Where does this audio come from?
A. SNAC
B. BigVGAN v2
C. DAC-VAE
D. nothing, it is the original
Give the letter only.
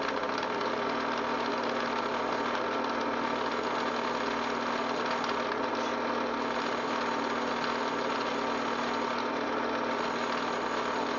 D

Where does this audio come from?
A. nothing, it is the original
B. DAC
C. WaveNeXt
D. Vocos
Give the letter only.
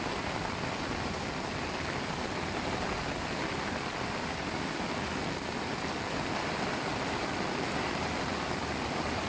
A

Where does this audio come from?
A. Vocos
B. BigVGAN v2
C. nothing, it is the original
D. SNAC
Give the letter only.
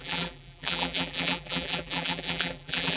B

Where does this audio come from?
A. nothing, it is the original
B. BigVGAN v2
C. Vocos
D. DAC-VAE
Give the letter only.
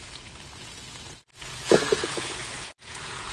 C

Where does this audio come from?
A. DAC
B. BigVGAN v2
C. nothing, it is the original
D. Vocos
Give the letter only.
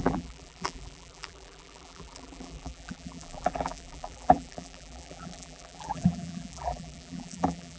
B